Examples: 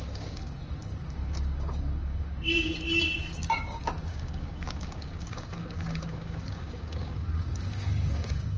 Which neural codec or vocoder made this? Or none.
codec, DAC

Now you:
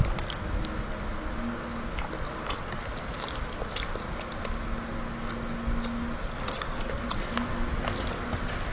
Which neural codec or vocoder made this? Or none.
none